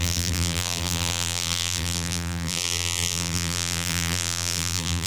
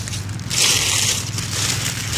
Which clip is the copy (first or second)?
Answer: first